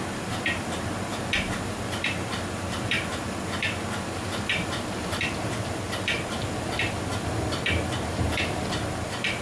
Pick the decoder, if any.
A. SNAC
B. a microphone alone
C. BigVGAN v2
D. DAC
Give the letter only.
C